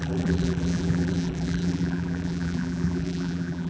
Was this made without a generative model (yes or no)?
no